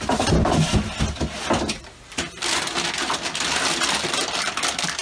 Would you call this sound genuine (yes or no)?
yes